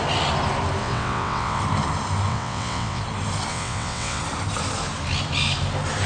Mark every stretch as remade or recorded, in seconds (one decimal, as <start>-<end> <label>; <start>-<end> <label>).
0.0-0.8 recorded; 0.8-1.6 remade; 1.6-2.3 recorded; 2.3-3.0 remade; 3.0-3.5 recorded; 3.5-4.2 remade; 4.2-6.1 recorded